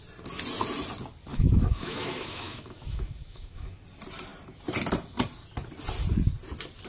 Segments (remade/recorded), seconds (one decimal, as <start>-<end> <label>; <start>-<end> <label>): 0.0-1.3 recorded; 1.3-3.8 remade; 3.8-6.9 recorded